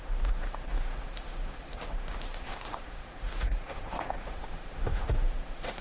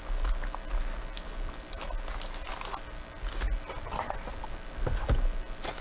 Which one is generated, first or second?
first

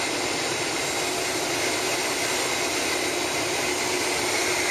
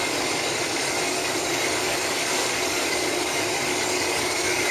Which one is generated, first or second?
second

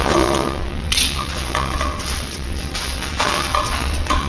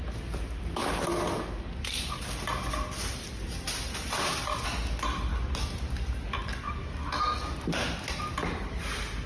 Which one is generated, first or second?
first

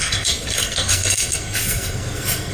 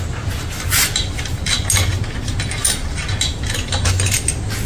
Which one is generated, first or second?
first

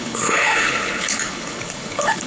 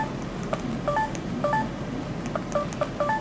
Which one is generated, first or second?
first